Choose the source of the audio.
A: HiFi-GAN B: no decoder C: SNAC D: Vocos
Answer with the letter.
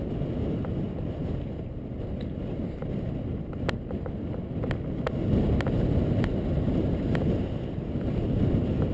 B